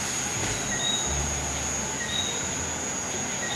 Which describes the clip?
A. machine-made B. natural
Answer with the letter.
B